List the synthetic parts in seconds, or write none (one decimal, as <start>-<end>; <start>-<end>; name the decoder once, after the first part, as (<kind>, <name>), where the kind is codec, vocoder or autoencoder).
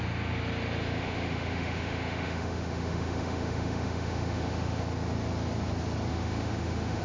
0.8-4.8 (autoencoder, DAC-VAE); 6.1-7.0